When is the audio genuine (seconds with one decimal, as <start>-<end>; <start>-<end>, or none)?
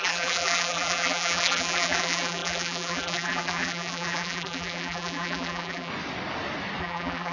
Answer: 5.9-6.8